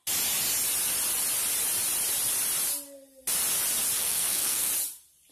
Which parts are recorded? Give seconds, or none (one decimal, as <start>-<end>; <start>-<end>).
0.0-4.0; 4.7-5.3